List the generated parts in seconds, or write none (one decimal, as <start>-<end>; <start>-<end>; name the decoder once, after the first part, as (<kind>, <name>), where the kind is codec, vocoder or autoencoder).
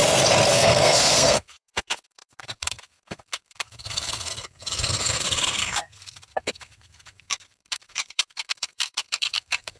0.5-9.8 (codec, SNAC)